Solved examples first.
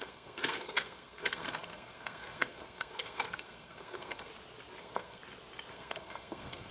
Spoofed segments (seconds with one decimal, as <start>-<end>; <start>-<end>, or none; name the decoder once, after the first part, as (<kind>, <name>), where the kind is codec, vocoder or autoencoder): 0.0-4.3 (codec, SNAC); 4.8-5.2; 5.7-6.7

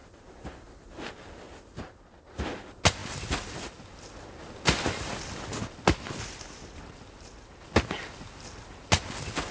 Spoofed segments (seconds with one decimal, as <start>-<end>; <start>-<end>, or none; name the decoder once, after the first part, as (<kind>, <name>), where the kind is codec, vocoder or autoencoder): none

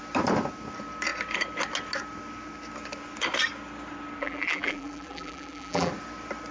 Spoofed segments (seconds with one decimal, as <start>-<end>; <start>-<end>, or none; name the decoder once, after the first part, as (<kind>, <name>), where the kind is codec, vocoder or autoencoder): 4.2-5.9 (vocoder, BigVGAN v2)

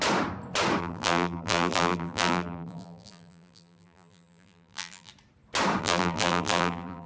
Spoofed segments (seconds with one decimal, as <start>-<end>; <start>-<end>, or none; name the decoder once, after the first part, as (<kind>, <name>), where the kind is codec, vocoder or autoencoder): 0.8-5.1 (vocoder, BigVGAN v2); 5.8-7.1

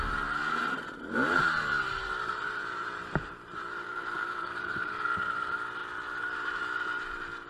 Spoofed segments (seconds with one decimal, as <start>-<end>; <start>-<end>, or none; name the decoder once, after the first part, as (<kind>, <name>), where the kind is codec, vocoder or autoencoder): 0.4-4.9 (vocoder, BigVGAN v2); 5.8-6.6